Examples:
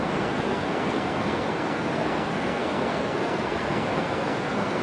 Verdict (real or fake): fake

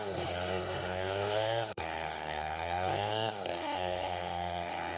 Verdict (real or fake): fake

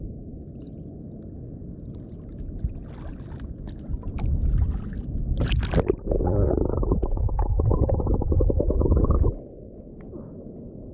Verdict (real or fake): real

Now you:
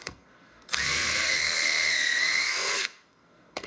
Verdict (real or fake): fake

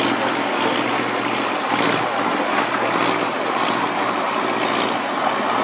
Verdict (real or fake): real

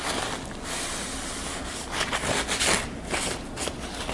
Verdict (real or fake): real